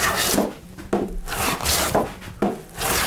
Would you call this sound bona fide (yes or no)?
yes